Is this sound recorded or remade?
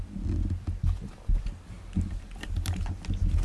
recorded